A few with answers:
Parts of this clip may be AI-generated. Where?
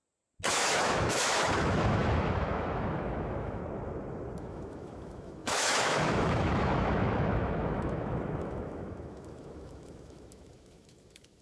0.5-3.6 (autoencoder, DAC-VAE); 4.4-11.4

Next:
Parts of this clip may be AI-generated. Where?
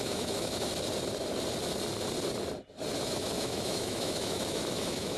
0.0-0.7 (autoencoder, DAC-VAE); 3.0-5.2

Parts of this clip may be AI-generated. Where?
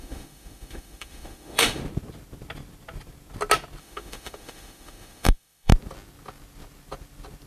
0.0-1.8 (autoencoder, DAC-VAE); 3.8-5.7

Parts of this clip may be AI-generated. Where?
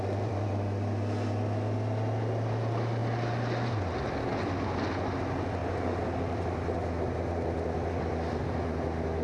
none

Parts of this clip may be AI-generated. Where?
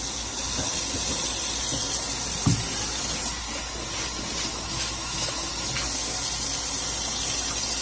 4.5-5.5 (autoencoder, DAC-VAE)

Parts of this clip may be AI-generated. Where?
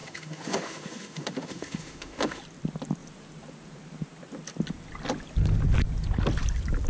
0.0-2.4 (autoencoder, DAC-VAE)